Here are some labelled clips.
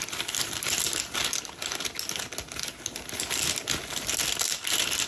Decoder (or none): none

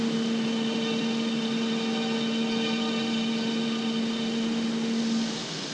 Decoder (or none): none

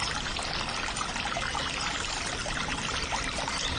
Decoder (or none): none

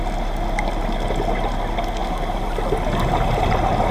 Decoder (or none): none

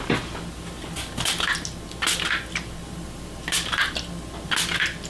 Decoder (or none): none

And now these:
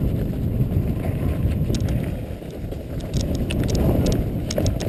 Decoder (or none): none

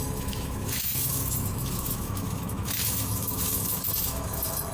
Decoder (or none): autoencoder, DAC-VAE